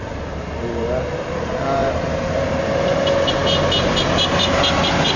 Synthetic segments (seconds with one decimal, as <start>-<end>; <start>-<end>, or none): 0.0-1.4; 1.8-2.6